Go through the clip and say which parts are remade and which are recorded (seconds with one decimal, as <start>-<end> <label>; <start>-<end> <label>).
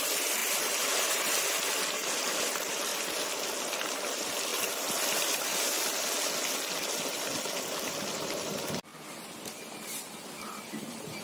0.0-2.9 remade; 2.9-3.6 recorded; 3.6-4.5 remade; 4.5-7.5 recorded; 7.5-8.9 remade; 8.9-10.6 recorded; 10.6-11.2 remade